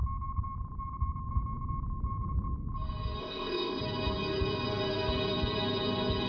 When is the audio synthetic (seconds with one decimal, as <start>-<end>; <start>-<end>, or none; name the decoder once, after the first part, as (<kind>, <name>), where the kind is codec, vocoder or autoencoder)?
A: 3.2-3.8 (codec, ZipCodec)